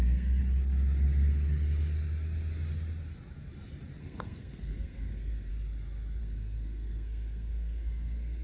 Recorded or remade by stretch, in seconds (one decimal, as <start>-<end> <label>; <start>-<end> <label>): 0.0-0.4 remade; 0.4-4.0 recorded; 4.0-5.5 remade; 5.5-6.2 recorded; 6.2-8.4 remade